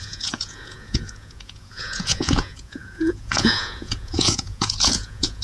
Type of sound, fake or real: fake